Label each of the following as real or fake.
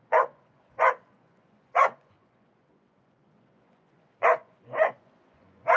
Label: fake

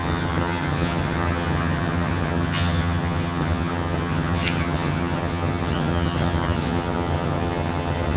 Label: fake